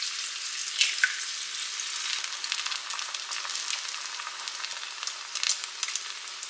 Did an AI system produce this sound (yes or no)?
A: no